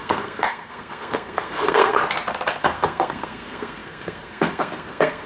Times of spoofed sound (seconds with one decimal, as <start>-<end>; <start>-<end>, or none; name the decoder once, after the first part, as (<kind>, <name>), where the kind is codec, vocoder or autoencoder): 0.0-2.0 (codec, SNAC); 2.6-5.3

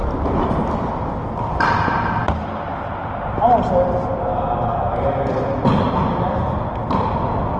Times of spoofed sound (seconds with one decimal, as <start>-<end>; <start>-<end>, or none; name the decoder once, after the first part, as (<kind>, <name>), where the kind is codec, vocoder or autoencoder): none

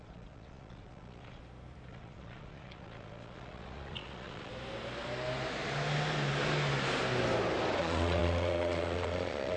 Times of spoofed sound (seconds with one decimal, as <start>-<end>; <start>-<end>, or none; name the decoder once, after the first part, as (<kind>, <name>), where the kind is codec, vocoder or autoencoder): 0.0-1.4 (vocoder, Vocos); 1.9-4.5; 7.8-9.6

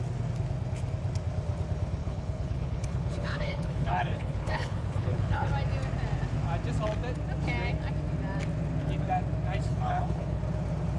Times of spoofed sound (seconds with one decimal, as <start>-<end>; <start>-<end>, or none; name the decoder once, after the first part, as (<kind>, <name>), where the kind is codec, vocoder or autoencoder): 2.0-5.5 (codec, HILCodec); 9.7-10.4

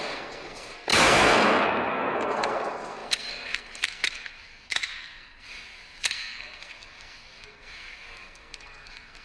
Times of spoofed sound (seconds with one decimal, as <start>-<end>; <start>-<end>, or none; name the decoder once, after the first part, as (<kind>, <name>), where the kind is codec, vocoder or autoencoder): 0.0-9.2 (codec, SNAC)

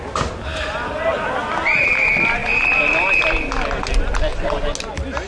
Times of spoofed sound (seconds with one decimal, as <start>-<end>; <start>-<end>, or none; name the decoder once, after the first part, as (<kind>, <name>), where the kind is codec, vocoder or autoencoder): none

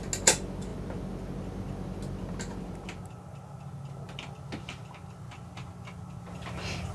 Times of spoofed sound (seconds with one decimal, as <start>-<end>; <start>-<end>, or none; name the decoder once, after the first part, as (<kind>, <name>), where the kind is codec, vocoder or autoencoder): none

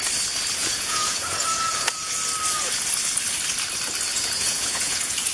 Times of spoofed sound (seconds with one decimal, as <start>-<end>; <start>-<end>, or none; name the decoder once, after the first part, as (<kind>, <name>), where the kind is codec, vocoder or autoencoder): 0.6-2.1 (vocoder, Vocos); 4.1-5.3